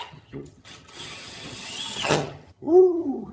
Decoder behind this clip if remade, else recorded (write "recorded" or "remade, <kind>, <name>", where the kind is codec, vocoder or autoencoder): remade, vocoder, HiFi-GAN